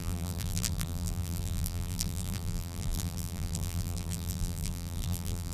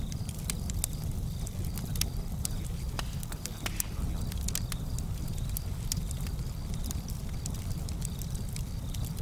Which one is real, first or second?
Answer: second